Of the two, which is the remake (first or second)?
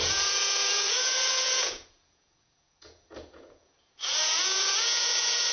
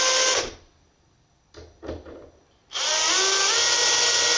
first